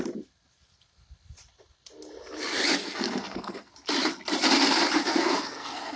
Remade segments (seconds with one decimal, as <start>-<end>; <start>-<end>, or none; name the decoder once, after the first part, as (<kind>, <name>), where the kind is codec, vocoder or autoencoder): 2.8-3.7 (codec, SNAC); 5.0-6.0